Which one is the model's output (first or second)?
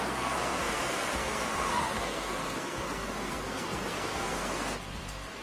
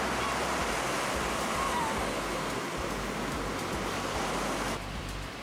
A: first